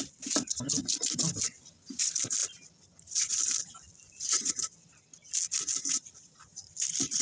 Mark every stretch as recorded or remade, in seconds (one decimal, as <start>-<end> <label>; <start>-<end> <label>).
0.0-2.4 recorded; 2.4-4.5 remade; 4.5-7.2 recorded